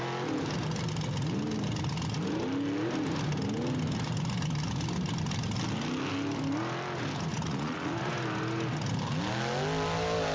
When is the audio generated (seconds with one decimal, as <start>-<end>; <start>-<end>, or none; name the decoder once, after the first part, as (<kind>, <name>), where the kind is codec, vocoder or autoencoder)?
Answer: 7.3-8.1 (vocoder, Vocos)